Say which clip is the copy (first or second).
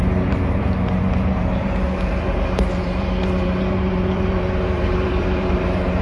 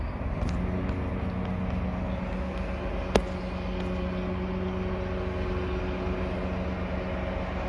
first